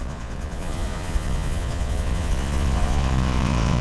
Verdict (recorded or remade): remade